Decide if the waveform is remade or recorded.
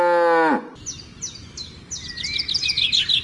recorded